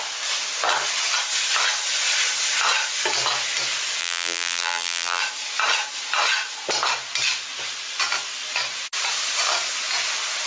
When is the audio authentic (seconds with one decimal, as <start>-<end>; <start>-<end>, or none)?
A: 0.0-4.0; 5.2-10.5